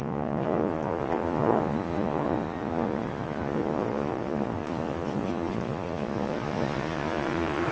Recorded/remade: remade